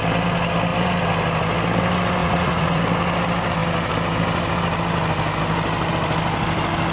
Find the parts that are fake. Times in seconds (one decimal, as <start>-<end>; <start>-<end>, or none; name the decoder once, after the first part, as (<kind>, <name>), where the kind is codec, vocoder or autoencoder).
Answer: 2.2-2.8 (vocoder, Vocos)